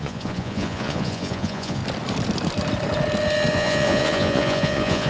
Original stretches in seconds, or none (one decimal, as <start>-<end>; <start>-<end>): 1.8-3.5